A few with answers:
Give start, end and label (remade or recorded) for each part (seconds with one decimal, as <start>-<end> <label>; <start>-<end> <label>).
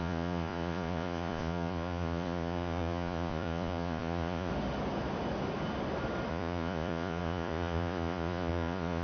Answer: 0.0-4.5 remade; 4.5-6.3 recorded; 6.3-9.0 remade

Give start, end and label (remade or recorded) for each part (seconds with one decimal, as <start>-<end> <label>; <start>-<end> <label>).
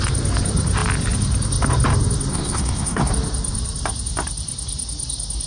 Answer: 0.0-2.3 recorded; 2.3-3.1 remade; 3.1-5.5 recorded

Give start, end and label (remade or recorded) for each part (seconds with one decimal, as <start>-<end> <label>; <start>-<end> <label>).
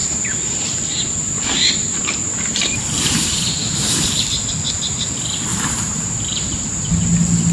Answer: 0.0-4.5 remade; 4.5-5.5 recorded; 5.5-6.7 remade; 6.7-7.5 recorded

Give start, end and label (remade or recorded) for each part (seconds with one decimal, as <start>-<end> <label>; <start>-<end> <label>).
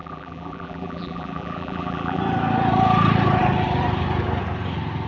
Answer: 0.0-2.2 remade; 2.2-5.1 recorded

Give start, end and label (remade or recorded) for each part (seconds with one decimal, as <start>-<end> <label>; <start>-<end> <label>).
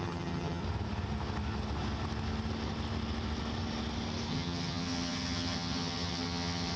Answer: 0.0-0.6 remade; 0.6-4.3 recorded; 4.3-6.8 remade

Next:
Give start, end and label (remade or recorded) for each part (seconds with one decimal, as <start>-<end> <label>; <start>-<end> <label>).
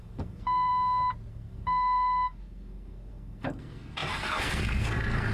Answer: 0.0-0.7 remade; 0.7-1.3 recorded; 1.3-5.3 remade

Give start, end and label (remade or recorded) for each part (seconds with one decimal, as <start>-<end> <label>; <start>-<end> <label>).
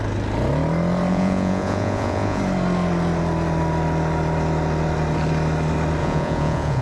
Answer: 0.0-1.1 recorded; 1.1-2.4 remade; 2.4-6.0 recorded; 6.0-6.8 remade